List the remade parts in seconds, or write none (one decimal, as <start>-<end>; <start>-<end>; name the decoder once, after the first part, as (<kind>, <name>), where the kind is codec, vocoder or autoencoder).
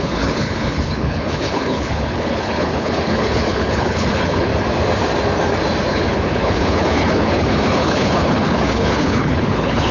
0.0-4.5 (codec, HILCodec); 5.9-9.9